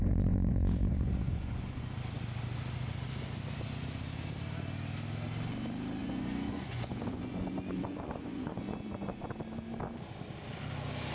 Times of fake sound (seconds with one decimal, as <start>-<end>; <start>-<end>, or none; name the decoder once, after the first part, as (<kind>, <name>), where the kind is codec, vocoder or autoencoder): 0.0-1.9 (vocoder, Vocos); 6.0-9.2